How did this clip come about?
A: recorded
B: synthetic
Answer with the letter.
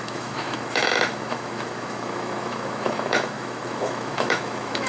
B